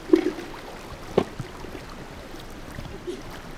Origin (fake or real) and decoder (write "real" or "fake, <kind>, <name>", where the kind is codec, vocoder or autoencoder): real